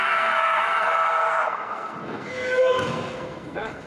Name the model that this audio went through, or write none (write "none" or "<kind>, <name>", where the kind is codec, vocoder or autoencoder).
codec, SNAC